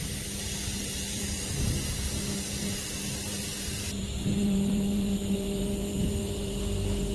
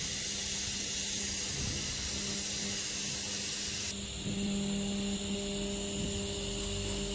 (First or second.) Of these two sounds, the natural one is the second